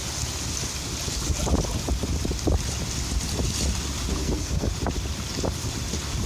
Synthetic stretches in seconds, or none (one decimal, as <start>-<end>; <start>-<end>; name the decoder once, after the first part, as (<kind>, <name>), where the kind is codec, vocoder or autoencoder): 4.2-4.7 (codec, SNAC)